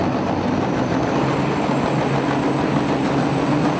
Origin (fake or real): real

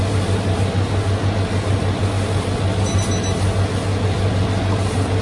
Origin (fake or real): real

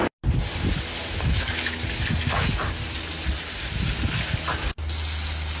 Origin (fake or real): real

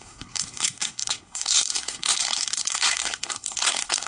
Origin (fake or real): fake